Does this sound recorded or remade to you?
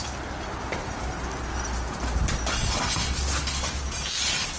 recorded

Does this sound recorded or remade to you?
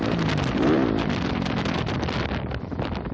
recorded